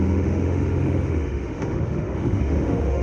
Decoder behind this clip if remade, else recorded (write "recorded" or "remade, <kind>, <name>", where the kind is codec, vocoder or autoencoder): remade, autoencoder, DAC-VAE